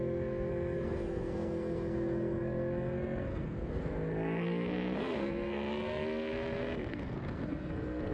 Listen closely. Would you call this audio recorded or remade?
remade